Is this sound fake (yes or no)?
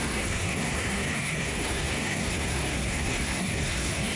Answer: yes